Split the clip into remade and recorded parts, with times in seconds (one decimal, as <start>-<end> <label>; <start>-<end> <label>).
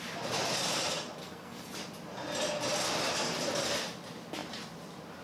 0.0-1.2 recorded; 1.2-1.7 remade; 1.7-5.2 recorded